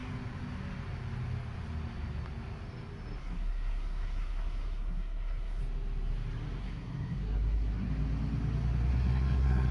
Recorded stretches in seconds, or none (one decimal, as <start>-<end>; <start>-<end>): 0.0-3.2; 5.6-6.6; 7.9-8.9